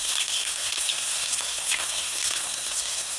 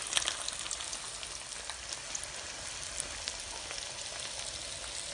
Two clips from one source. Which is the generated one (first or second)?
first